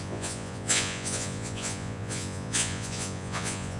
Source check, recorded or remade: remade